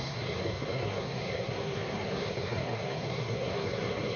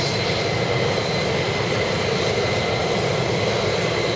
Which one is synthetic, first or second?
first